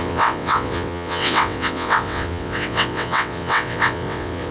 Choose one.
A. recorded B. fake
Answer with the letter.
B